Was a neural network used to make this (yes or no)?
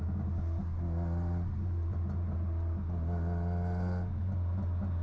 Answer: no